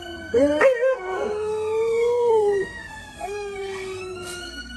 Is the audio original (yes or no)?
no